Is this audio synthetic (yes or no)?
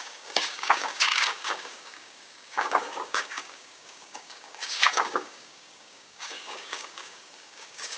yes